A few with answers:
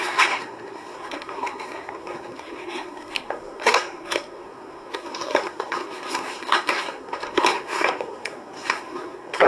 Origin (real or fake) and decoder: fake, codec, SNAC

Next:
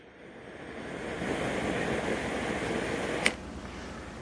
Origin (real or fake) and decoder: real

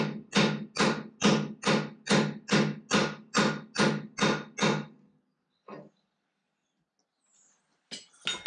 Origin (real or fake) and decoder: real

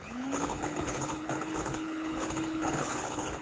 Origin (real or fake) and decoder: fake, codec, HILCodec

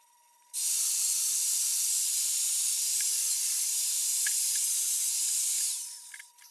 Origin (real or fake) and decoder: fake, vocoder, BigVGAN v2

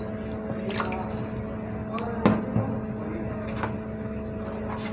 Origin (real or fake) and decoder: real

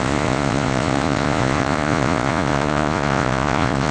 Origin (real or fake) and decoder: fake, vocoder, Vocos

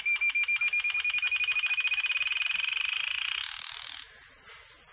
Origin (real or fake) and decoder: real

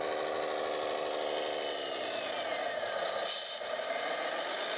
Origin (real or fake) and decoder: real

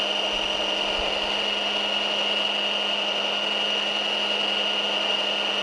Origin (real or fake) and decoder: real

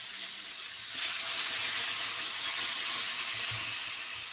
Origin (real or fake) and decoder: real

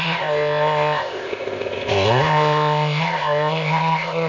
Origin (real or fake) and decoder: fake, codec, ZipCodec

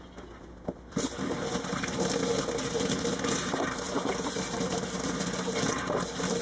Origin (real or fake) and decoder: real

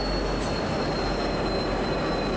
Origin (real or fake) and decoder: real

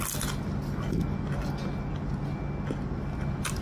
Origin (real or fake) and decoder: real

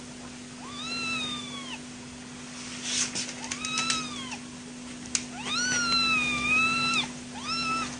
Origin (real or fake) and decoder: real